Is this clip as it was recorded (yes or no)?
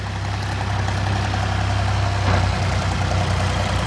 yes